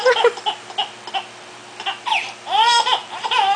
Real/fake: real